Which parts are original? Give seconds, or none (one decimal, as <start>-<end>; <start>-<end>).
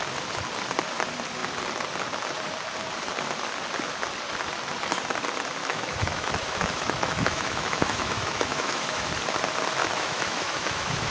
0.0-5.6; 9.1-9.8